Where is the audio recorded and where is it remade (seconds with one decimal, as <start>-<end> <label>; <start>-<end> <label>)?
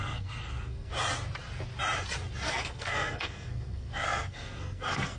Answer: 0.0-0.9 remade; 0.9-2.5 recorded; 2.5-5.2 remade